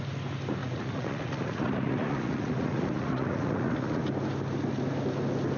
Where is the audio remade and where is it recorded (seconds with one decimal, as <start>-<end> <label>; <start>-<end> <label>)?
0.0-0.6 recorded; 0.6-4.0 remade; 4.0-5.6 recorded